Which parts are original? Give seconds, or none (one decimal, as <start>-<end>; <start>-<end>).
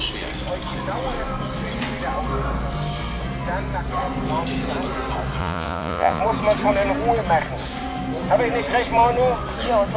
0.0-5.4; 6.2-10.0